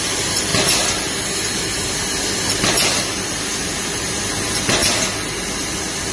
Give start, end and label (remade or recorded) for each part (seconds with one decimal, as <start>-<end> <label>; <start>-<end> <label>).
0.0-6.1 recorded